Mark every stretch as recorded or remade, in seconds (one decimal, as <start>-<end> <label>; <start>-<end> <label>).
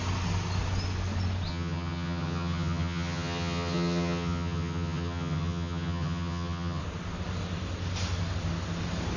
0.0-1.5 recorded; 1.5-6.8 remade; 6.8-9.2 recorded